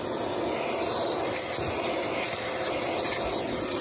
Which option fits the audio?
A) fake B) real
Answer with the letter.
B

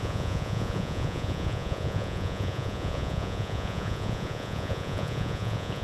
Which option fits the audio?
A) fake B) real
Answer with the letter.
A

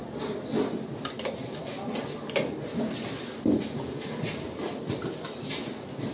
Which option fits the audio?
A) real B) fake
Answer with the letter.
A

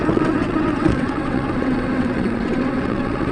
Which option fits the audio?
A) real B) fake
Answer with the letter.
B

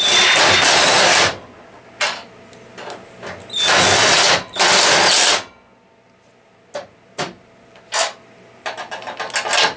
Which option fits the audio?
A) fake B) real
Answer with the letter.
B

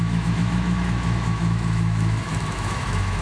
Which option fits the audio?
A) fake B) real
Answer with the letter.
A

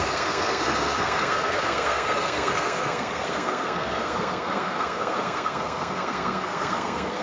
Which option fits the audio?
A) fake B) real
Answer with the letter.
A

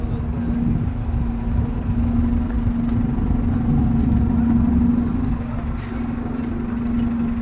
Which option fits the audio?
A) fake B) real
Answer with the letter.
B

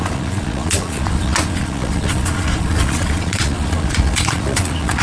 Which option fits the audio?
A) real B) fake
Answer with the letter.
B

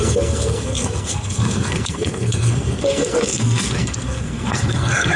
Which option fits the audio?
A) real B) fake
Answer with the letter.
B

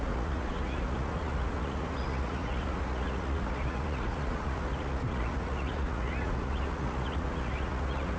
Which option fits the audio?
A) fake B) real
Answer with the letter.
A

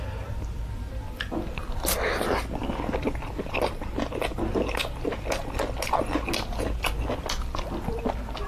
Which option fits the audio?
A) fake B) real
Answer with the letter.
B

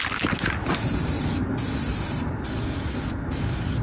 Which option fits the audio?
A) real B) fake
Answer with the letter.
A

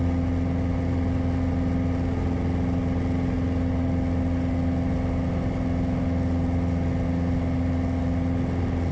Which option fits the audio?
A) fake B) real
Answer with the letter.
B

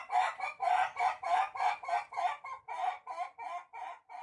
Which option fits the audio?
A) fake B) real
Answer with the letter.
A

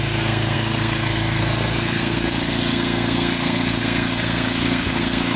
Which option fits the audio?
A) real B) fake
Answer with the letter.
B